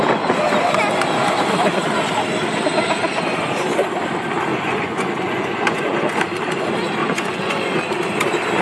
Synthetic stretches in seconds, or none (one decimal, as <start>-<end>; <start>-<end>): 4.5-6.2; 7.0-7.8